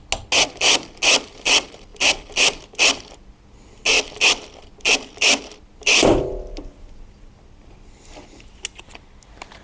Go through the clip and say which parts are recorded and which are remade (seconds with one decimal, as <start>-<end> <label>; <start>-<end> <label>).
0.0-9.6 recorded